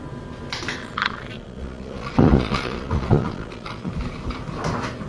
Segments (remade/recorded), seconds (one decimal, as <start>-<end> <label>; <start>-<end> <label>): 0.0-0.8 recorded; 0.8-3.9 remade; 3.9-5.1 recorded